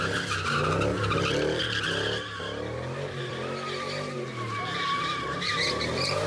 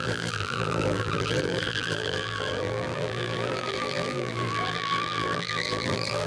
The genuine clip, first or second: first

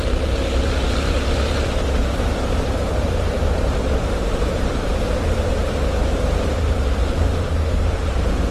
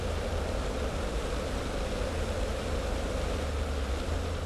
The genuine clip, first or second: second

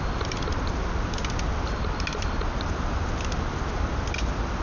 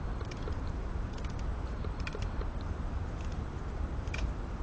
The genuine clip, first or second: first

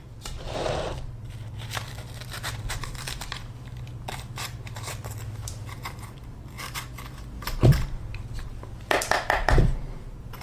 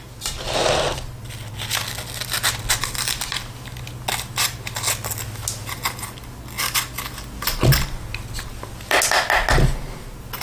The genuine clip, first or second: second